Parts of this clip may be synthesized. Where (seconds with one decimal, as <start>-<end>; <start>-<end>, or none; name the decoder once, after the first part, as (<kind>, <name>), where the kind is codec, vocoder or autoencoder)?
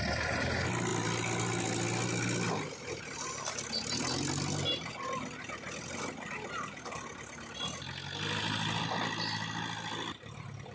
none